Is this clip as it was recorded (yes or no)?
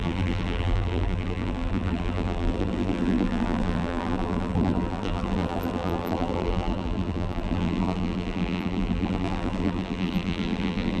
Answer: no